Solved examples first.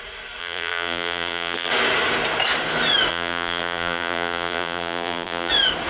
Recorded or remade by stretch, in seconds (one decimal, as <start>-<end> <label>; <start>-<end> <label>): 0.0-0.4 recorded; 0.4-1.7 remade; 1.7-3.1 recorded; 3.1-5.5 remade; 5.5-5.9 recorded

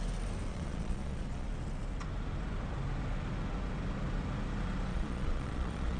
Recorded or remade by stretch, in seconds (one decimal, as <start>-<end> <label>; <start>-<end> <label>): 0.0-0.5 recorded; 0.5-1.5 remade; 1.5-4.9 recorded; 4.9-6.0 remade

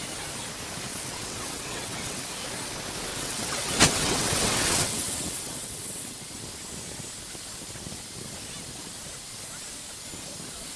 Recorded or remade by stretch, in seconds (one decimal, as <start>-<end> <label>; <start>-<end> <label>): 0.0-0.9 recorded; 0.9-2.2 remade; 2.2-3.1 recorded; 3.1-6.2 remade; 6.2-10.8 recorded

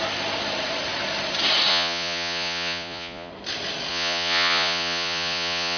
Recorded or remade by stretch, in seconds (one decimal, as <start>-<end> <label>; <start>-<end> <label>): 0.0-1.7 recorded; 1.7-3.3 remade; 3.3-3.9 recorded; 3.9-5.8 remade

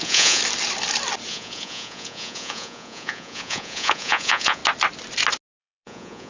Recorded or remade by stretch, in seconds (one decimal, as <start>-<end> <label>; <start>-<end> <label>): 0.0-0.4 remade; 0.4-1.3 recorded; 1.3-4.6 remade; 4.6-5.6 recorded; 5.6-6.3 remade

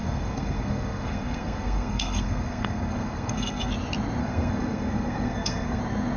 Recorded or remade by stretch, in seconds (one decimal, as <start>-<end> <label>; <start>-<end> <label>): 0.0-3.7 remade; 3.7-4.2 recorded; 4.2-5.8 remade; 5.8-6.2 recorded

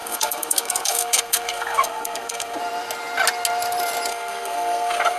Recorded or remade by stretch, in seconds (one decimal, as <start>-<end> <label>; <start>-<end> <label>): 0.0-2.6 remade; 2.6-4.1 recorded; 4.1-5.2 remade

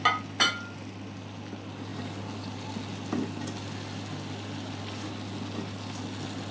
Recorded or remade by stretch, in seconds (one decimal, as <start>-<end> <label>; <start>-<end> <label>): 0.0-6.5 recorded